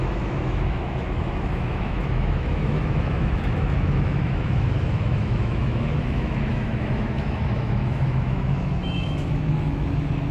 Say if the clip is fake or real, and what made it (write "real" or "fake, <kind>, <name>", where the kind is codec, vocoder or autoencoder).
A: fake, autoencoder, DAC-VAE